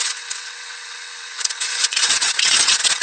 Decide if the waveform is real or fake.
fake